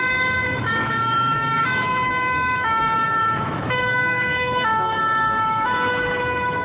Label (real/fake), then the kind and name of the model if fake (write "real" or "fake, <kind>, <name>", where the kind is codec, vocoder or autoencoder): fake, autoencoder, DAC-VAE